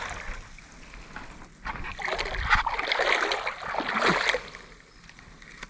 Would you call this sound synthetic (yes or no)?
no